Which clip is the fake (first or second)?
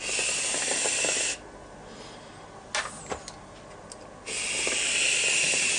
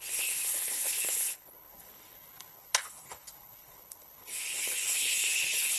second